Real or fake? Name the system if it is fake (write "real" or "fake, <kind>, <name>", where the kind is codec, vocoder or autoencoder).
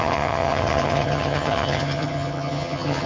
fake, vocoder, HiFi-GAN